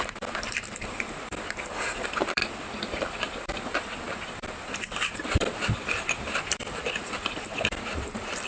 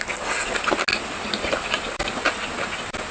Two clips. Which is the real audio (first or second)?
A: second